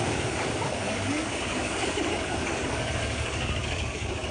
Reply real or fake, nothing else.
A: fake